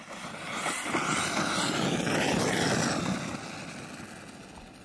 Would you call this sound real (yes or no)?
yes